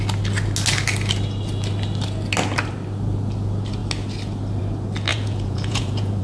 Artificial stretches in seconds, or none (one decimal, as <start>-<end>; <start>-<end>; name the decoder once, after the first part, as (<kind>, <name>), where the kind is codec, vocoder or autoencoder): 5.1-6.2 (vocoder, Vocos)